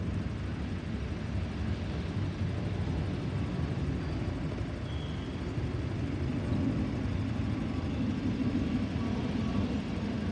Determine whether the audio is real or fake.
real